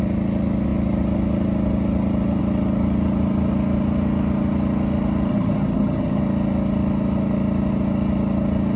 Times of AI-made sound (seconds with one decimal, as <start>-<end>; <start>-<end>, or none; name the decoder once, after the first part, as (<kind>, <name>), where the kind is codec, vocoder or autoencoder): 5.3-6.2 (vocoder, HiFi-GAN)